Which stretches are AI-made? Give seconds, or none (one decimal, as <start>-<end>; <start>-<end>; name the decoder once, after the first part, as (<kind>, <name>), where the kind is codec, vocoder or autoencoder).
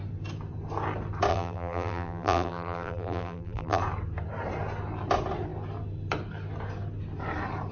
1.3-3.8 (vocoder, BigVGAN v2)